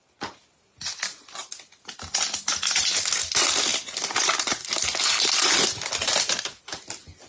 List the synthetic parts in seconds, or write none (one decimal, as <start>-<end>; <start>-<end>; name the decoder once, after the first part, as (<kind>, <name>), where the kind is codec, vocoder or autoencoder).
none

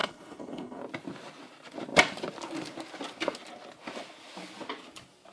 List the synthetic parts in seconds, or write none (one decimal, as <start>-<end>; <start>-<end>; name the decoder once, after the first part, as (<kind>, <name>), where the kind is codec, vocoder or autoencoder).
0.0-0.8 (codec, HILCodec)

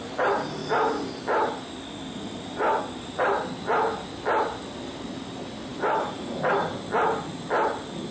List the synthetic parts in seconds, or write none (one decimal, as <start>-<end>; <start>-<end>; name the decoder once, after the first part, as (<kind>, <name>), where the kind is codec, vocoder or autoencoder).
5.7-6.3 (vocoder, BigVGAN v2)

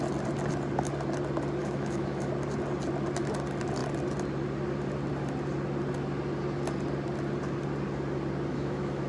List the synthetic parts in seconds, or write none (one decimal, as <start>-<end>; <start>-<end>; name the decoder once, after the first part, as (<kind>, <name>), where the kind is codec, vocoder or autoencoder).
1.6-2.3 (autoencoder, DAC-VAE); 8.5-9.1

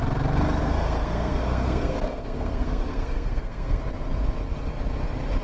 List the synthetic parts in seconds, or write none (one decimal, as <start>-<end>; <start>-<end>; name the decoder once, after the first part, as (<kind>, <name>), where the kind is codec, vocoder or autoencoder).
0.6-3.8 (codec, SNAC)

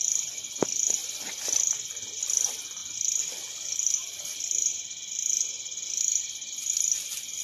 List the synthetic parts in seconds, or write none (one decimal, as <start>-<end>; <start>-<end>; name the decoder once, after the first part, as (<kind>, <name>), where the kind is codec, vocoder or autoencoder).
none

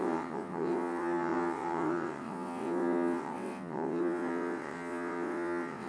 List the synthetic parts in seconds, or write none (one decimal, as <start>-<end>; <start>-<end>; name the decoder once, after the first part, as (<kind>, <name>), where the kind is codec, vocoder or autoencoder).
0.0-5.9 (vocoder, WaveNeXt)